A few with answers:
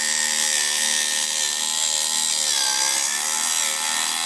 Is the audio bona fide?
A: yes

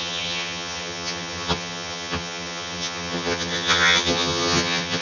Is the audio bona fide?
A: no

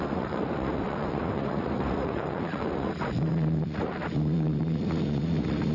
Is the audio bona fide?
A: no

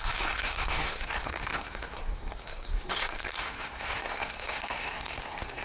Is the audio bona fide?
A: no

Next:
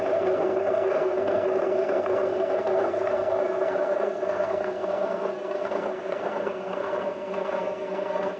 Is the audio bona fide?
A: no